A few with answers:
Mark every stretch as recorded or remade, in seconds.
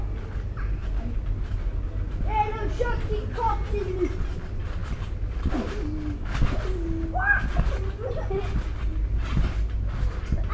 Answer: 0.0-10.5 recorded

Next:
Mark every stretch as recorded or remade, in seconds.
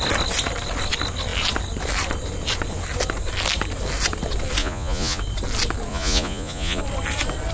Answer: 0.0-4.6 recorded; 4.6-5.2 remade; 5.2-5.9 recorded; 5.9-6.8 remade; 6.8-7.5 recorded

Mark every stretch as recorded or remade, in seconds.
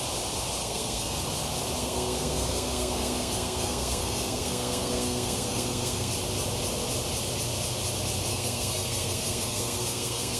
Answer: 0.0-0.6 recorded; 0.6-1.2 remade; 1.2-1.8 recorded; 1.8-6.1 remade; 6.1-8.3 recorded; 8.3-10.4 remade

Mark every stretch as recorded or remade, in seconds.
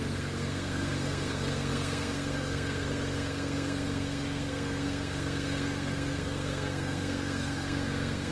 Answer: 0.0-8.3 remade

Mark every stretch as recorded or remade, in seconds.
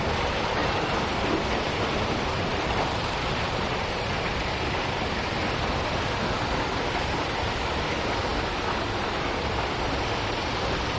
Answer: 0.0-0.6 recorded; 0.6-1.3 remade; 1.3-2.5 recorded; 2.5-4.3 remade; 4.3-11.0 recorded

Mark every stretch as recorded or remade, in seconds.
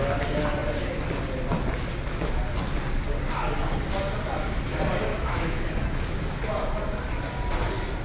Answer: 0.0-5.1 recorded; 5.1-6.4 remade; 6.4-8.0 recorded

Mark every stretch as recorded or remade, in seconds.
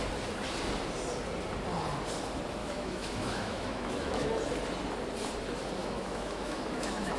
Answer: 0.0-2.6 recorded; 2.6-4.3 remade; 4.3-5.8 recorded; 5.8-7.2 remade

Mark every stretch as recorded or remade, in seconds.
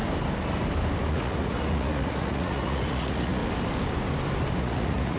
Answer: 0.0-1.1 recorded; 1.1-3.4 remade; 3.4-4.6 recorded; 4.6-5.2 remade